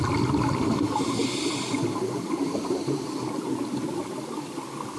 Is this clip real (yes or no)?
yes